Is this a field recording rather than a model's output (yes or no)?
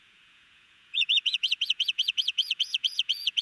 no